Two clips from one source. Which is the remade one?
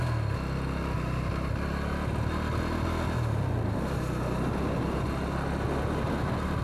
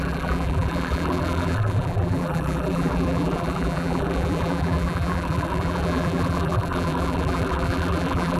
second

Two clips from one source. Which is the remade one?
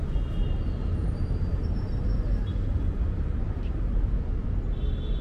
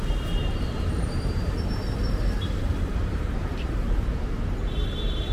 second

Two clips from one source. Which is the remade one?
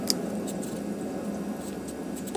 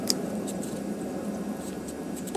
second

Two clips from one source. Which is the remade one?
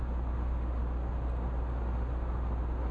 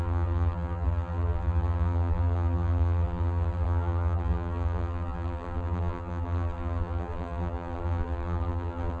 second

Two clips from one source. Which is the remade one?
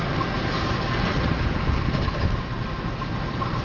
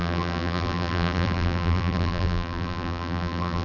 second